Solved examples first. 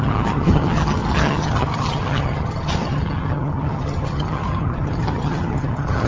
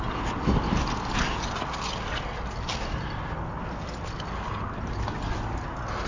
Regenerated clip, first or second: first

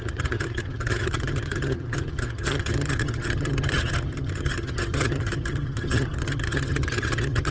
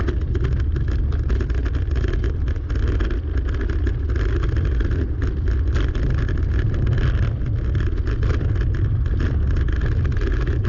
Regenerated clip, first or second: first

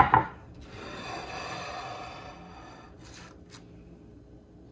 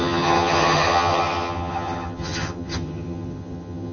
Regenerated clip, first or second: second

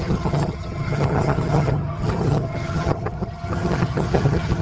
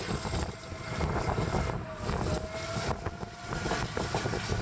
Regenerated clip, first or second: first